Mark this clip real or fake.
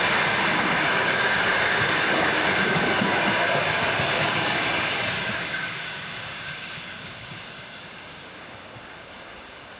fake